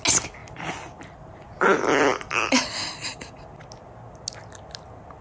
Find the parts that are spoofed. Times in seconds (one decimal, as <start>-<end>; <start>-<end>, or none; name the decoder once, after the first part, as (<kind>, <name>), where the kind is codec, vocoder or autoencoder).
0.4-3.5 (vocoder, BigVGAN v2)